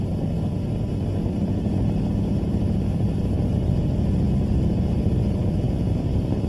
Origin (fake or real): fake